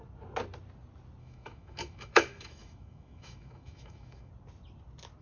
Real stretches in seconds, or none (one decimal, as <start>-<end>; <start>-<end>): 0.0-1.2; 4.3-5.2